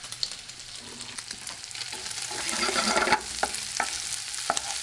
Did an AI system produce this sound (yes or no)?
no